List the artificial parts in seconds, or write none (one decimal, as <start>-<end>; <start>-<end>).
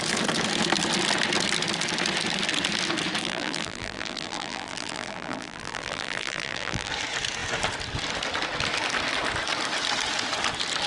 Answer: 3.2-6.9